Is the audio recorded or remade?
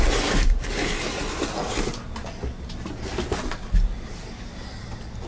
recorded